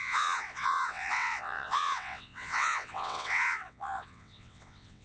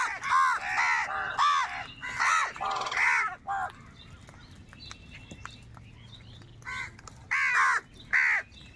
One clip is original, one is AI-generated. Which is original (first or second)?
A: second